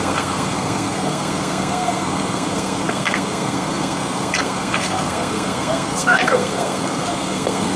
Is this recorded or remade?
remade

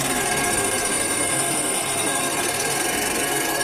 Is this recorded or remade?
remade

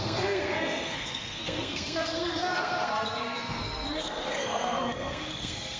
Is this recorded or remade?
remade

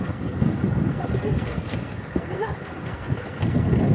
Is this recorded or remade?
remade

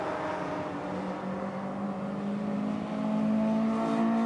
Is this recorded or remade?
recorded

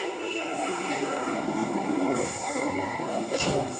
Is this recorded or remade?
remade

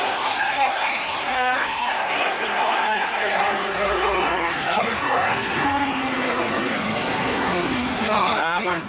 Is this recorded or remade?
remade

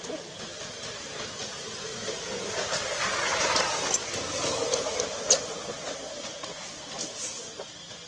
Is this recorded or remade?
recorded